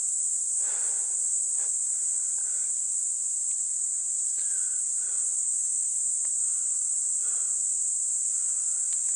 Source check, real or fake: fake